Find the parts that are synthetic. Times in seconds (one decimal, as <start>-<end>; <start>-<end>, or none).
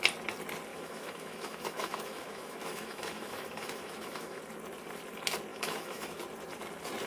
0.7-4.4; 5.5-6.2